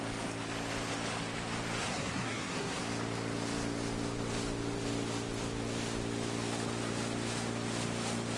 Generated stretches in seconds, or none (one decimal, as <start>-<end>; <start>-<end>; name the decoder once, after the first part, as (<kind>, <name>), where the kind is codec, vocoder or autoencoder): 1.8-2.8 (codec, SNAC)